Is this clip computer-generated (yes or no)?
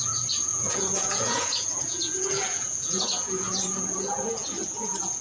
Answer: yes